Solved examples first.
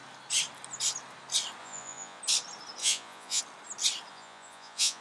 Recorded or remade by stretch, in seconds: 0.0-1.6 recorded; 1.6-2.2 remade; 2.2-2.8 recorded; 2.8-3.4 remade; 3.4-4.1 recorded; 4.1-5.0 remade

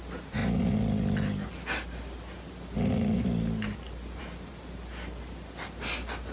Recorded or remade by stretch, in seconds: 0.0-6.3 recorded